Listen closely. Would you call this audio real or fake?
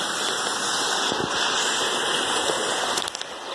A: real